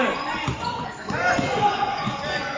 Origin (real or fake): fake